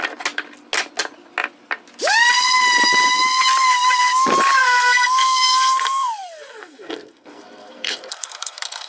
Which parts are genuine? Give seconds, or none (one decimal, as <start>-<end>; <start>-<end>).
0.0-4.6